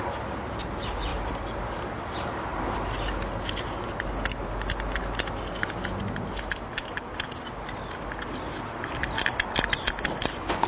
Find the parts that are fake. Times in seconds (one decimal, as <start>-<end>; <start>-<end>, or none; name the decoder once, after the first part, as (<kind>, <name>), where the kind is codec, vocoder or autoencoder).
none